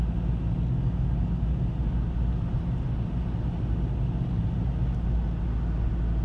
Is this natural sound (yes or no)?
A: yes